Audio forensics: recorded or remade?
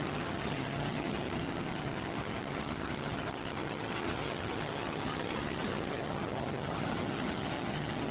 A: remade